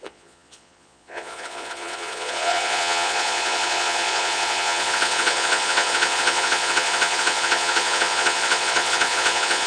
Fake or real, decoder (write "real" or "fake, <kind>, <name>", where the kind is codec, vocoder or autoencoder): fake, vocoder, Vocos